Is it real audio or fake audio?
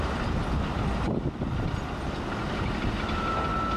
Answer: real